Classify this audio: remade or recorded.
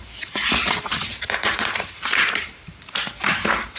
remade